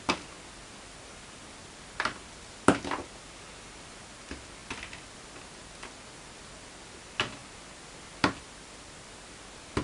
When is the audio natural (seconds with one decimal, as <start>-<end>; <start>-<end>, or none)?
0.0-9.8